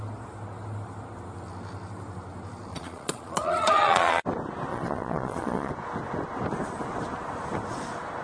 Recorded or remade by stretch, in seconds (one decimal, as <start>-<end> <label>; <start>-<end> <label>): 0.0-2.7 recorded; 2.7-4.2 remade; 4.2-4.7 recorded; 4.7-5.7 remade; 5.7-8.2 recorded